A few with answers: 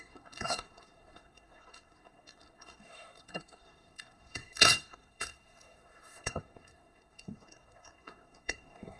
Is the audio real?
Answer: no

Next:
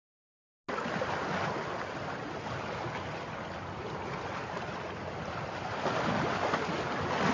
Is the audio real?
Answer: yes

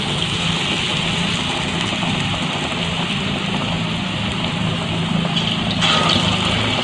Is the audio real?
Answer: yes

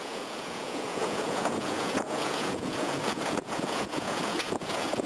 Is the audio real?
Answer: no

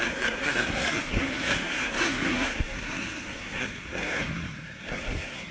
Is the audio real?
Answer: no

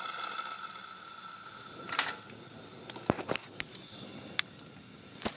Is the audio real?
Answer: yes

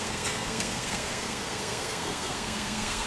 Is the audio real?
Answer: no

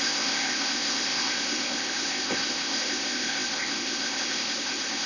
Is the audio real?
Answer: no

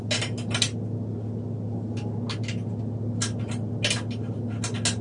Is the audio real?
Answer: yes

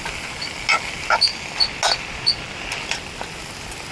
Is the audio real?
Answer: yes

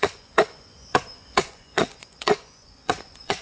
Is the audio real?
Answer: no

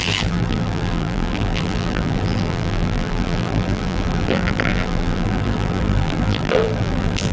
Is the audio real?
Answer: no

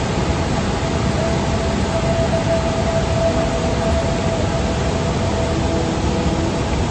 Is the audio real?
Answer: yes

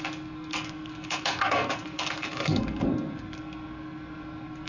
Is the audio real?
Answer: no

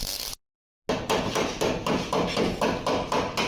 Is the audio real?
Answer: yes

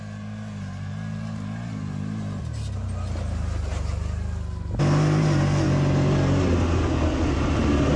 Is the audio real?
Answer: yes